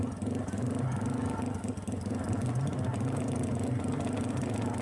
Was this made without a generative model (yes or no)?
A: yes